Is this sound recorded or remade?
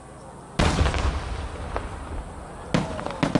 recorded